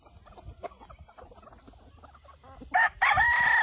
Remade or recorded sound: recorded